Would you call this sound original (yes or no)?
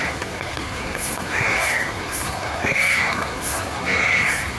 no